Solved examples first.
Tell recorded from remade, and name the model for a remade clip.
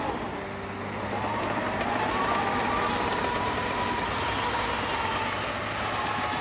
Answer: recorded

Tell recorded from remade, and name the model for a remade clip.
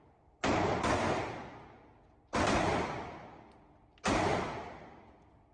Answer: recorded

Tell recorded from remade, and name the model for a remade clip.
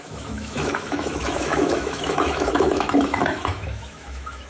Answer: remade, autoencoder, DAC-VAE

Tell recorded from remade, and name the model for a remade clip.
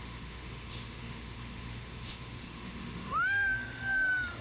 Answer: remade, autoencoder, DAC-VAE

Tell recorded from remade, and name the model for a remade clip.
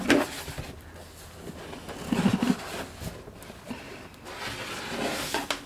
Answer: recorded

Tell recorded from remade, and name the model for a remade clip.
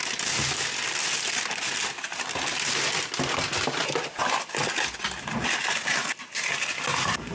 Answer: recorded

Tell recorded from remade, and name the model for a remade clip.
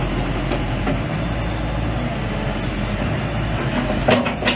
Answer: recorded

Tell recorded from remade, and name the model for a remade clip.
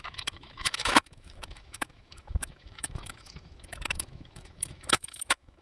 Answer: remade, autoencoder, DAC-VAE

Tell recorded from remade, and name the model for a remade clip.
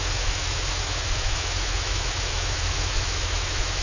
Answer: remade, autoencoder, DAC-VAE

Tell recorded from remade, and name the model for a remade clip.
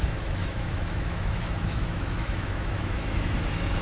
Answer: remade, autoencoder, DAC-VAE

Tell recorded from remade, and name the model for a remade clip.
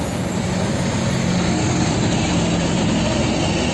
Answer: recorded